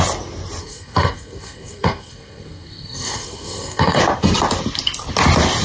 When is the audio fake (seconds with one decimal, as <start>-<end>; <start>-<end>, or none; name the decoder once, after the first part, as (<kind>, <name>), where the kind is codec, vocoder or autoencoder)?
0.6-4.0 (codec, SNAC)

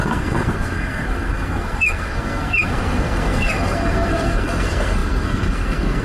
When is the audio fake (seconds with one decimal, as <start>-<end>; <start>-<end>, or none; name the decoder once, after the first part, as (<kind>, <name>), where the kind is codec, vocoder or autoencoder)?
0.0-6.0 (codec, SNAC)

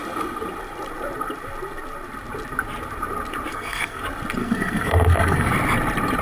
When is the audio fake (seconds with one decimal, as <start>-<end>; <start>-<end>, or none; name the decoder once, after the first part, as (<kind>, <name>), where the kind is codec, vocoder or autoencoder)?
3.5-4.0 (codec, SNAC); 4.4-5.5

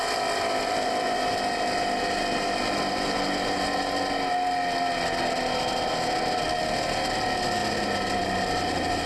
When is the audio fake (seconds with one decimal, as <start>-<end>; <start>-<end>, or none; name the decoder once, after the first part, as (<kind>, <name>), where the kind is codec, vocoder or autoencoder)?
none